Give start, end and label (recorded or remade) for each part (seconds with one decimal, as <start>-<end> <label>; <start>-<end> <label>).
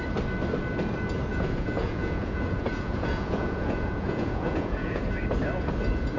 0.0-1.3 recorded; 1.3-5.0 remade; 5.0-6.2 recorded